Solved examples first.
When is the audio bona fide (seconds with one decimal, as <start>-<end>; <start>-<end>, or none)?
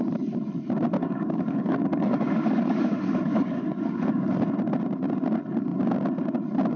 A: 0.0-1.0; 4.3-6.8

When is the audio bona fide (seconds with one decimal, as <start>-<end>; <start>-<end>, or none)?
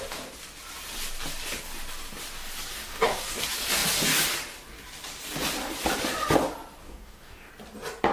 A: 0.0-2.7; 3.4-6.8; 7.5-8.1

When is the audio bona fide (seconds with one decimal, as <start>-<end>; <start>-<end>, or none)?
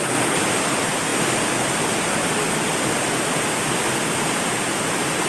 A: 0.0-5.3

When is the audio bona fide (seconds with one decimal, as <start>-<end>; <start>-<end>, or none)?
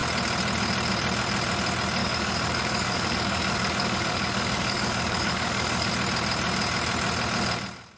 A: 0.0-2.0; 5.9-8.0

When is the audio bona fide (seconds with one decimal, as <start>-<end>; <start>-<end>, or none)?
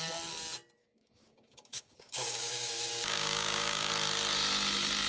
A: 0.0-0.8; 3.9-5.1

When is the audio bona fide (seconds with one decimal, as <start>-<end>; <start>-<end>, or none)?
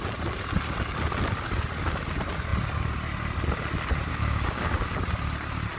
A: 0.0-4.1; 4.9-5.8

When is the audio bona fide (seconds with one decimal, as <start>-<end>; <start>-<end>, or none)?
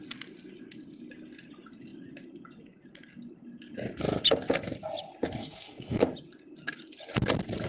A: 0.0-5.4; 6.0-7.7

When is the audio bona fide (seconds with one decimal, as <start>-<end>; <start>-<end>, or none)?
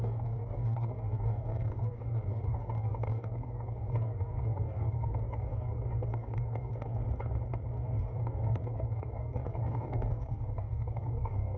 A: 7.0-7.7